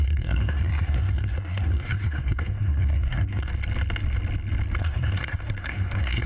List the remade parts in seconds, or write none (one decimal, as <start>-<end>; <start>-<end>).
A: 0.0-3.5; 4.8-6.3